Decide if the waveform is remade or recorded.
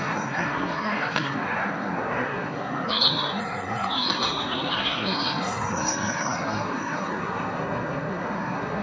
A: remade